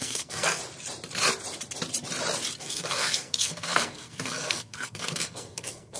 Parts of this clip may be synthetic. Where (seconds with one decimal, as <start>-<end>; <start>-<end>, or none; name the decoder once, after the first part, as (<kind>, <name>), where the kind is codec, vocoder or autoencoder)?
0.0-0.6 (codec, SNAC); 2.6-6.0